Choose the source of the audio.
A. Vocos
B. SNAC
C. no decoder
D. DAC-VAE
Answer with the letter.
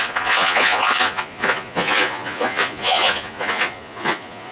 A